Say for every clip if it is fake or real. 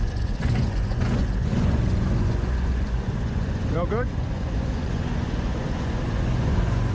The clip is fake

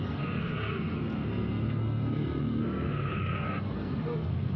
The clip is fake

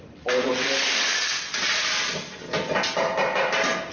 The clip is real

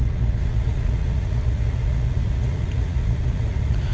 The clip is fake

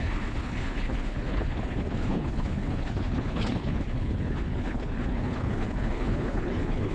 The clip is fake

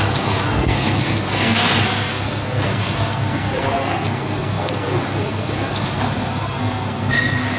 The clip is fake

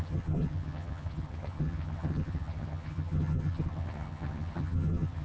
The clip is fake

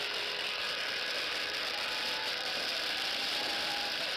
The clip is fake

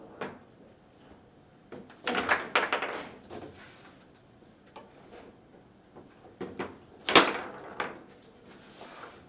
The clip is real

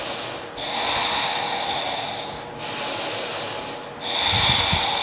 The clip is real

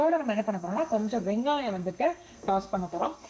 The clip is fake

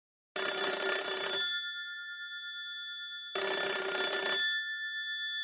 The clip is real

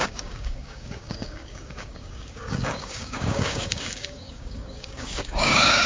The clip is fake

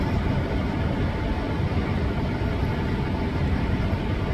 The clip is real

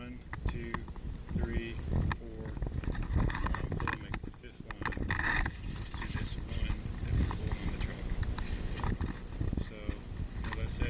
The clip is real